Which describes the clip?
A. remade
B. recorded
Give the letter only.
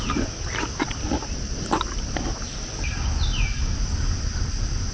B